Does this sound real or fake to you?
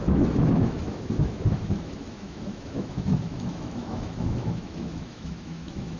fake